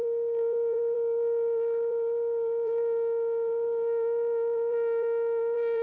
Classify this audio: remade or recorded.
remade